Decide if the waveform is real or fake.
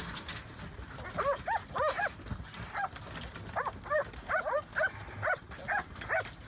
real